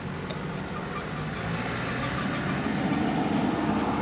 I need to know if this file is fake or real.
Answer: real